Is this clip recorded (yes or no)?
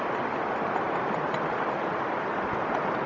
yes